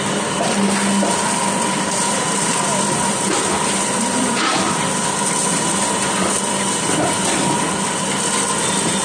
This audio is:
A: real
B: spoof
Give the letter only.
A